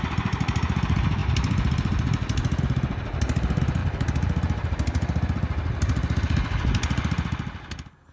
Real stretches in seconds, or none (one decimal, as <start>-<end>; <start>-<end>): 1.2-2.6; 3.8-8.1